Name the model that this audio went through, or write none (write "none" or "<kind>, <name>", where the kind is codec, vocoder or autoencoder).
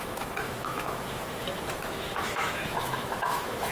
autoencoder, DAC-VAE